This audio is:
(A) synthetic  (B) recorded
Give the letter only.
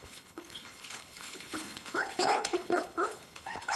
A